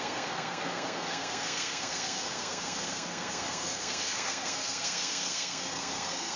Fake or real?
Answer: fake